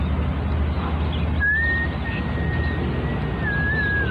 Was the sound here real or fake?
real